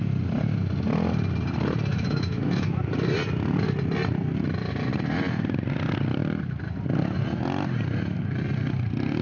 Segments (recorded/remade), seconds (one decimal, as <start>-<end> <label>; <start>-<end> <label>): 0.0-1.9 recorded; 1.9-2.8 remade; 2.8-9.2 recorded